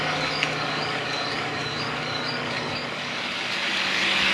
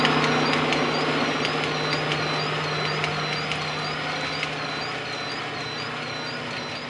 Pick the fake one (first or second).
first